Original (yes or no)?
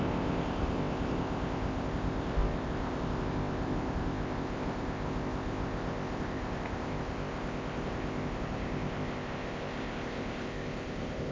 no